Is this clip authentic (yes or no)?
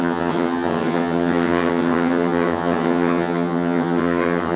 no